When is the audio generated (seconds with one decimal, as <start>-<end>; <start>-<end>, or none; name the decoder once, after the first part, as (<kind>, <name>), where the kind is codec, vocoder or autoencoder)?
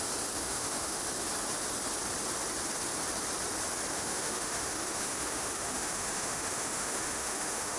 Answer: 0.4-1.0 (autoencoder, DAC-VAE); 3.9-7.8